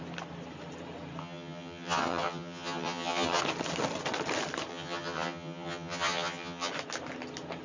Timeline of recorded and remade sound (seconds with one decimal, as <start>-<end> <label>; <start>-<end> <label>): 0.0-1.2 recorded; 1.2-3.4 remade; 3.4-4.7 recorded; 4.7-6.7 remade; 6.7-7.6 recorded